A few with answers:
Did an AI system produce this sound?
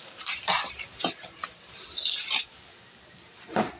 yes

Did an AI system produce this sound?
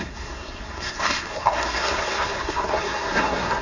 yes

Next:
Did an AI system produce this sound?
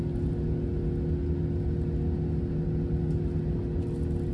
no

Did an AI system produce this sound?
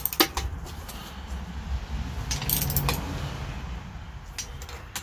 no